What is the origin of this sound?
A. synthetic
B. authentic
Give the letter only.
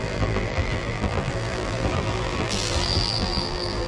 A